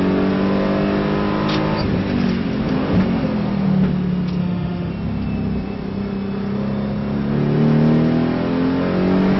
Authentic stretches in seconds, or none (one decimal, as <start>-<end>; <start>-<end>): 0.0-4.4; 4.9-9.4